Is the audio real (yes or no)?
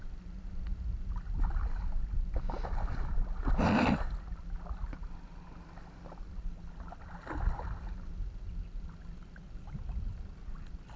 yes